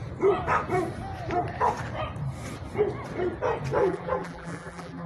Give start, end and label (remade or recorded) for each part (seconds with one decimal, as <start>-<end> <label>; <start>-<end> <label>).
0.0-3.8 recorded; 3.8-5.1 remade